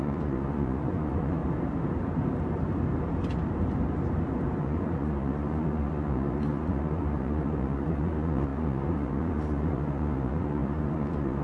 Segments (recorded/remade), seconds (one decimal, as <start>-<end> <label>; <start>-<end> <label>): 0.0-1.4 remade; 1.4-4.6 recorded; 4.6-11.4 remade